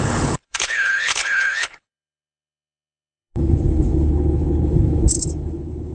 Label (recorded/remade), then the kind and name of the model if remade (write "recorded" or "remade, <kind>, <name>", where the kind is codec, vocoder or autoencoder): remade, codec, HILCodec